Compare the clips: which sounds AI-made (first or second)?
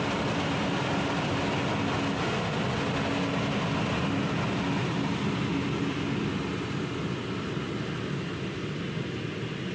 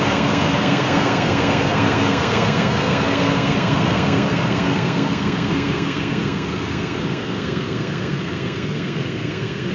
second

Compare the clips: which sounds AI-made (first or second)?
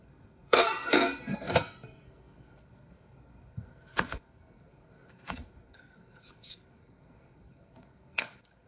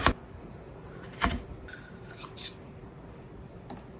first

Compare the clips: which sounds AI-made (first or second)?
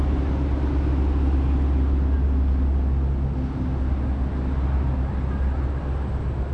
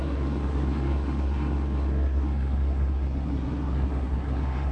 second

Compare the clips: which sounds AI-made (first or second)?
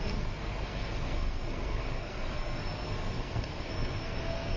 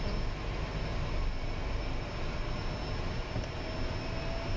first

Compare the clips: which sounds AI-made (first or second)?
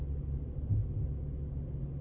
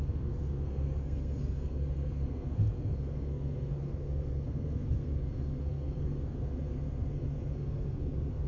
second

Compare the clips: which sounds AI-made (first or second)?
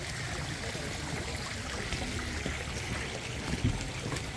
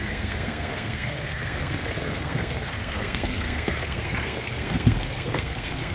second